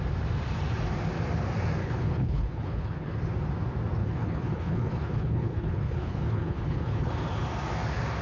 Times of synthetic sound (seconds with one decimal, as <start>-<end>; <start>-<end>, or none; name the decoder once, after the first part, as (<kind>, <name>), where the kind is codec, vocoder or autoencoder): 1.8-3.2 (codec, HILCodec); 4.0-7.1